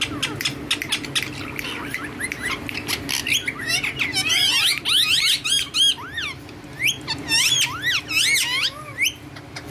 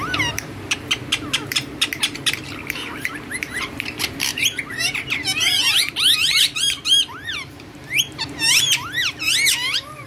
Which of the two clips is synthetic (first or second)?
second